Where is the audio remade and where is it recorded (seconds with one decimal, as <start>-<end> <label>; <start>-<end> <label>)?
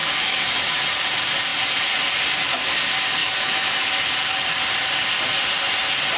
0.0-0.9 remade; 0.9-3.2 recorded; 3.2-3.9 remade; 3.9-6.2 recorded